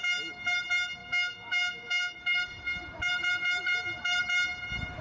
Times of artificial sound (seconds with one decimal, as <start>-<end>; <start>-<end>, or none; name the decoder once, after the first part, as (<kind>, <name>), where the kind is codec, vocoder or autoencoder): 1.0-2.2 (codec, DAC)